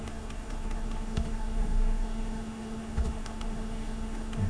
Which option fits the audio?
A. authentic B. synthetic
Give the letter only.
B